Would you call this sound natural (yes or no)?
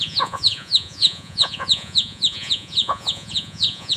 no